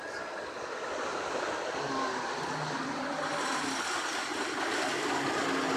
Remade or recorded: recorded